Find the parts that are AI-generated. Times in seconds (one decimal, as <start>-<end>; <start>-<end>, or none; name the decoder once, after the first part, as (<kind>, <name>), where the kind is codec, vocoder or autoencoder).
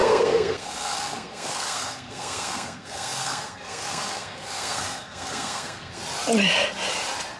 0.0-6.0 (codec, SNAC)